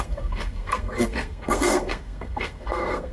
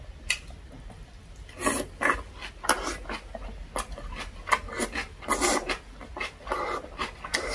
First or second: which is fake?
first